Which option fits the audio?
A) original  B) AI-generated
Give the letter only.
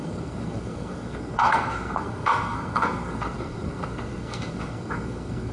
B